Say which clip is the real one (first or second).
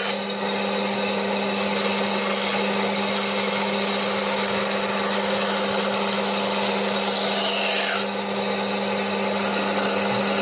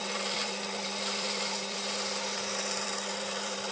first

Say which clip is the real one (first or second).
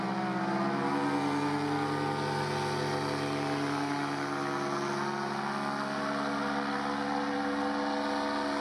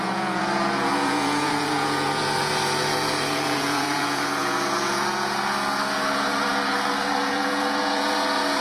first